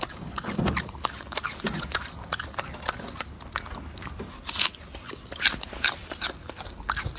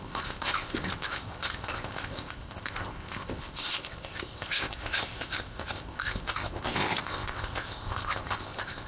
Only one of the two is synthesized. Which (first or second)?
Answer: second